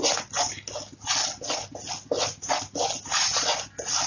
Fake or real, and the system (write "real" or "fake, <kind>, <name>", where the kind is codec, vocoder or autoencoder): real